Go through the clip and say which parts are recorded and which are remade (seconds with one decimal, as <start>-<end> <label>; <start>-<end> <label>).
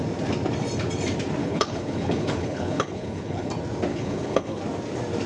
0.0-1.4 recorded; 1.4-3.5 remade; 3.5-3.9 recorded; 3.9-4.6 remade; 4.6-5.3 recorded